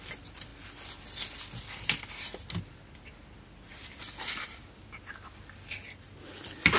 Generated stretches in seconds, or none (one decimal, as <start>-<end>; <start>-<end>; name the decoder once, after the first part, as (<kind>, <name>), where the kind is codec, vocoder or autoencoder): none